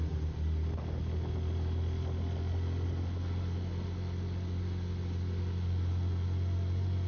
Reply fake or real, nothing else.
real